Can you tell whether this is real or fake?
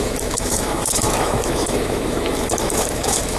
fake